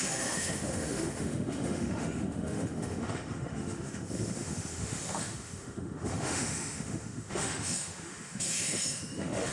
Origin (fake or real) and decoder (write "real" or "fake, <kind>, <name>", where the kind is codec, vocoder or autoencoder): fake, autoencoder, DAC-VAE